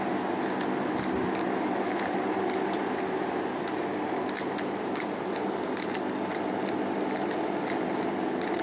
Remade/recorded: recorded